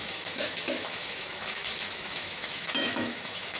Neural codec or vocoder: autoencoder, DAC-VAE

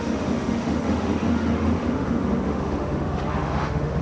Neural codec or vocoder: autoencoder, DAC-VAE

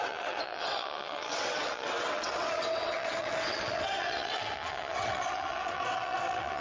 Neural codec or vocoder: vocoder, WaveNeXt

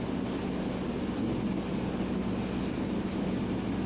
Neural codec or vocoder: none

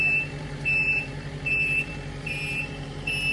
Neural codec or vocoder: vocoder, BigVGAN v2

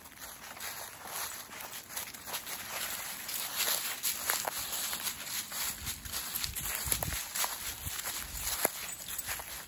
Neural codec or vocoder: none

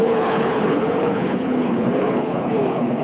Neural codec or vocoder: codec, HILCodec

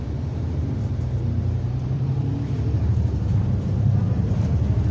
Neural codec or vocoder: vocoder, BigVGAN v2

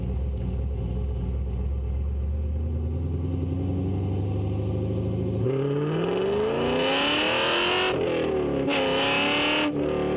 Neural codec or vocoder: none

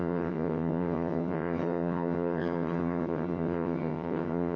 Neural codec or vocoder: vocoder, HiFi-GAN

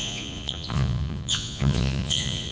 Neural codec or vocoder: vocoder, Vocos